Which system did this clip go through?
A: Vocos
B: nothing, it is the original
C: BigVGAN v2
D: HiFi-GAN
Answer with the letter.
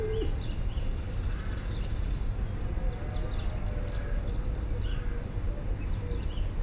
B